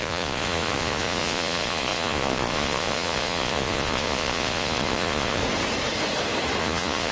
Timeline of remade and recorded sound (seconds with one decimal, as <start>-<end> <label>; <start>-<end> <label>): 0.0-5.4 remade; 5.4-6.6 recorded; 6.6-7.1 remade